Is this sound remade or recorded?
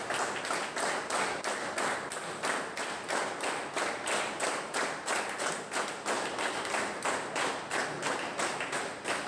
recorded